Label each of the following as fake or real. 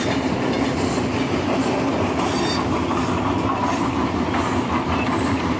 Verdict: real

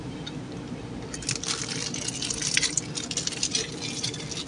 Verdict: real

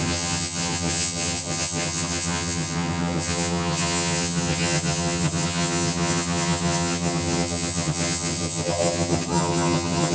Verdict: fake